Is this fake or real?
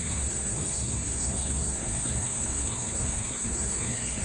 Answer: fake